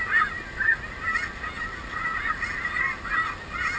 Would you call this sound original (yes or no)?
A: yes